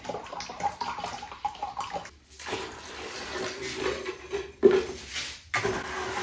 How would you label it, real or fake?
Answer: real